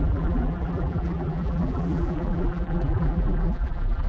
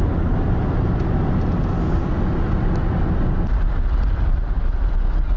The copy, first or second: first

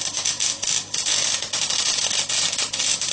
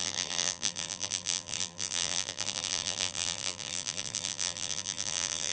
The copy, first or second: second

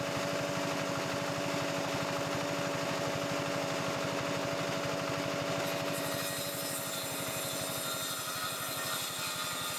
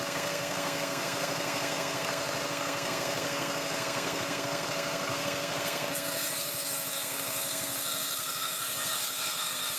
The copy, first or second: second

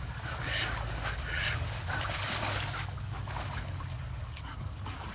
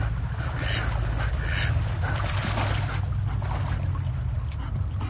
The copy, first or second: first